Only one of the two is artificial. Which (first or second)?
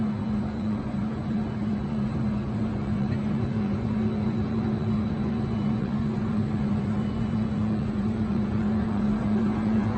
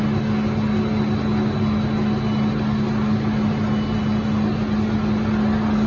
first